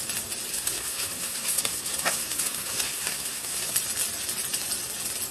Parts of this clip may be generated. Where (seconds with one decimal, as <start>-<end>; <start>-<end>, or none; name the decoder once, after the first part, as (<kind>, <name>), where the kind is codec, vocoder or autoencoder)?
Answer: 0.5-3.7 (codec, SNAC)